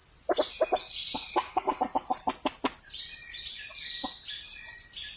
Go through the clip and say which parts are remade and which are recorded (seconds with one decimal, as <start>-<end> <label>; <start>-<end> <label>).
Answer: 0.0-5.2 recorded